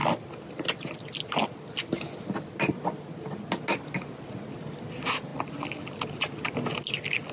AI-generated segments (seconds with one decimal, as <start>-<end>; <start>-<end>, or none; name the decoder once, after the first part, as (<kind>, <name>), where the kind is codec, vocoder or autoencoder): none